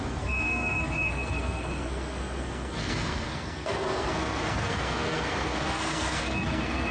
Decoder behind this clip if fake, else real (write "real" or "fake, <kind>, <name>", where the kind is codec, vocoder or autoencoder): fake, codec, SNAC